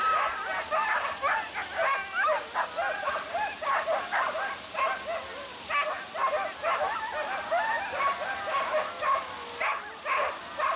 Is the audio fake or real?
real